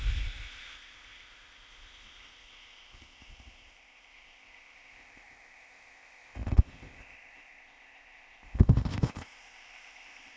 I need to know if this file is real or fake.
fake